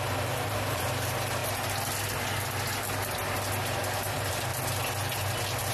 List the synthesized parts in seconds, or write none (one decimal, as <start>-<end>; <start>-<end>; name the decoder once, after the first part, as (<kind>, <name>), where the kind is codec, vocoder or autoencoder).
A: 0.0-1.4 (vocoder, BigVGAN v2); 4.1-4.5